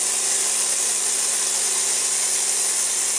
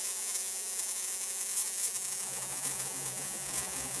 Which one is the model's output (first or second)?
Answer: second